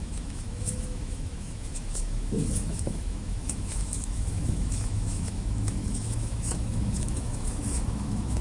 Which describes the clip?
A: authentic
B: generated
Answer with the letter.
B